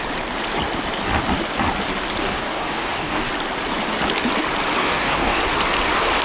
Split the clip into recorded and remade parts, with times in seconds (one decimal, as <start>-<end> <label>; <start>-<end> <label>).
0.0-2.2 recorded; 2.2-3.3 remade; 3.3-4.8 recorded; 4.8-5.4 remade; 5.4-6.2 recorded